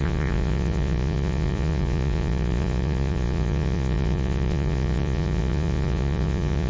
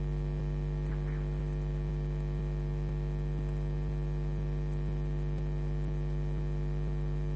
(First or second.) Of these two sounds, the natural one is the second